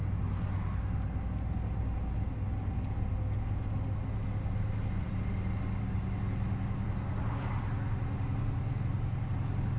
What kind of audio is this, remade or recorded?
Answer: recorded